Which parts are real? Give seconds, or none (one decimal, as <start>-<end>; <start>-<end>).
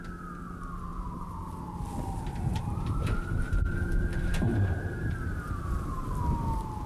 0.0-0.9; 1.4-2.5; 6.2-6.9